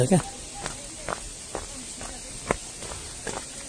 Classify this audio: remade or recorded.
recorded